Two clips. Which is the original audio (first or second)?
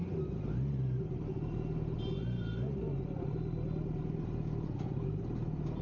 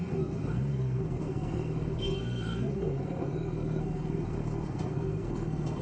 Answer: first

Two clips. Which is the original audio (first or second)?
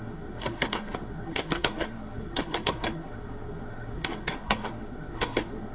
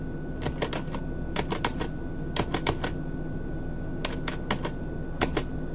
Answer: second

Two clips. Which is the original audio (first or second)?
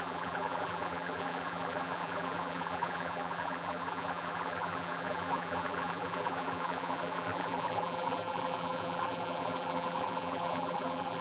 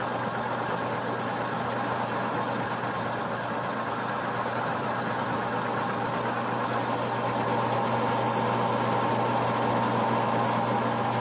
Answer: second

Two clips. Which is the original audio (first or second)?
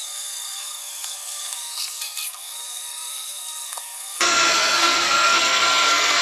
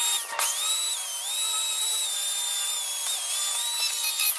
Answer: second